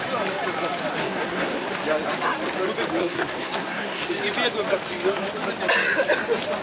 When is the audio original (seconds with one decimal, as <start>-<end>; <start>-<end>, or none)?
0.0-1.0; 1.7-3.0; 4.1-6.6